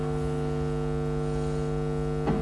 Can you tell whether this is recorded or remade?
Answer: recorded